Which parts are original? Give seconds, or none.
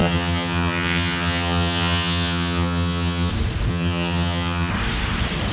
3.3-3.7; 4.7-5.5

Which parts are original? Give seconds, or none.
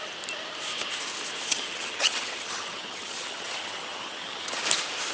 0.0-1.5; 4.6-5.1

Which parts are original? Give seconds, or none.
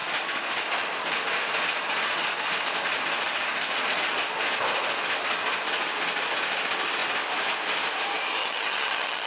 0.0-8.4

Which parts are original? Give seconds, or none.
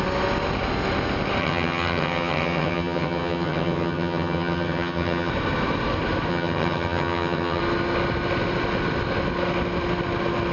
0.0-1.4; 5.3-6.3; 7.6-10.5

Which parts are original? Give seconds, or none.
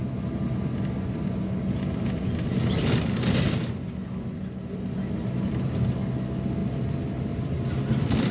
0.0-8.3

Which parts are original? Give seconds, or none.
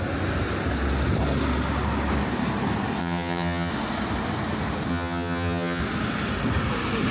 0.0-3.0; 3.7-4.9; 5.8-7.1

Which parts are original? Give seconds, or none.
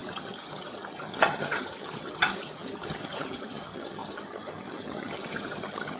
none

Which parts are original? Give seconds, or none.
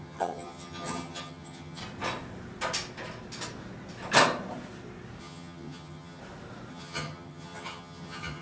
1.8-5.2; 6.2-6.7